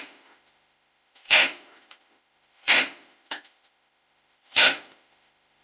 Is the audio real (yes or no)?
no